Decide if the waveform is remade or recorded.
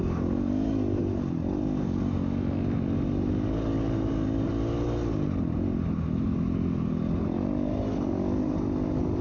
recorded